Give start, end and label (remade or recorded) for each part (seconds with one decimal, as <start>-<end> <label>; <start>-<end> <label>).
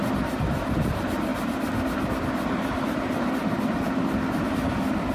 0.0-5.1 recorded